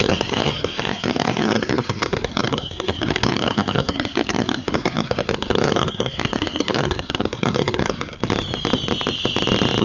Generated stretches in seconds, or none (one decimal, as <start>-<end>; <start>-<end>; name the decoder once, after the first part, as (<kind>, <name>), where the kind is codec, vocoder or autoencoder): 0.0-8.2 (codec, SNAC)